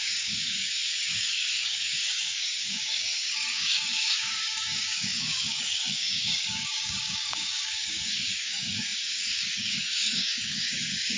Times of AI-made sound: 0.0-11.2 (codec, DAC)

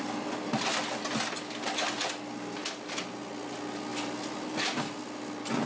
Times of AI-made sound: none

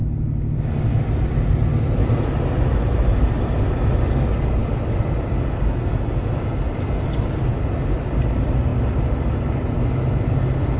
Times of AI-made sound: none

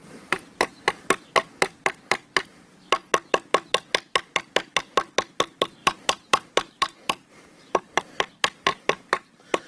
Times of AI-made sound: 0.0-0.9 (vocoder, BigVGAN v2); 5.8-8.0; 8.7-9.7

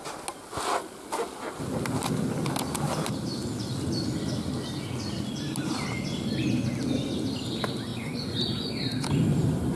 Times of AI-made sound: 7.9-8.7 (vocoder, Vocos)